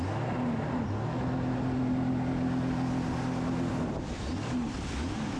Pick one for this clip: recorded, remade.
recorded